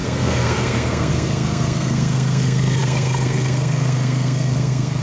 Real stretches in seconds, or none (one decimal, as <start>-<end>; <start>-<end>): none

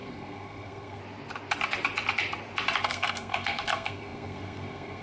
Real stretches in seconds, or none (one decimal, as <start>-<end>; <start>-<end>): 1.0-2.8

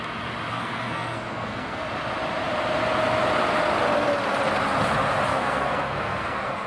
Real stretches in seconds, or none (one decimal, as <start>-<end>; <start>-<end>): 0.0-0.5; 1.9-5.3

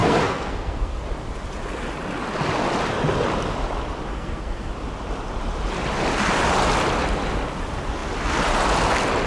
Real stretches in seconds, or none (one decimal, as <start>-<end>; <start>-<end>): 1.0-4.1; 4.7-9.3